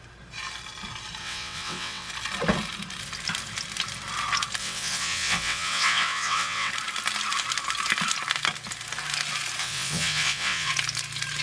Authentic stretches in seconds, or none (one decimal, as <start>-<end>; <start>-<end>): 0.0-1.2; 2.1-4.6; 6.7-9.6; 10.7-11.4